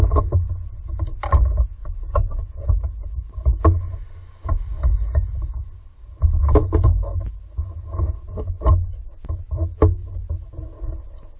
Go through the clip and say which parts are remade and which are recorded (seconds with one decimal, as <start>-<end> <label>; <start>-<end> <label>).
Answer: 0.0-1.8 recorded; 1.8-2.7 remade; 2.7-11.4 recorded